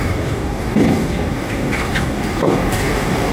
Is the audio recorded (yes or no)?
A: no